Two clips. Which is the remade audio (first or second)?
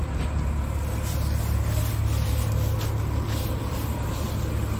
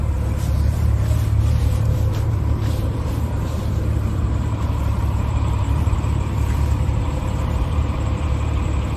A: second